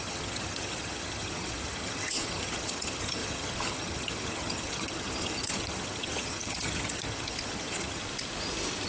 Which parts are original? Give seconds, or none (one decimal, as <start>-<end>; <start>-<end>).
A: 8.0-8.9